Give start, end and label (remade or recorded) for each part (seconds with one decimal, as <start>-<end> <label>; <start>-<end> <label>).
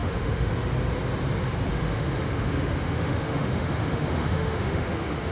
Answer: 0.0-0.5 remade; 0.5-1.7 recorded; 1.7-5.3 remade